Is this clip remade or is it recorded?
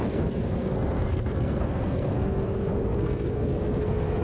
remade